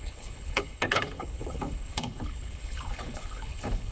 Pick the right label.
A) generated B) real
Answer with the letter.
A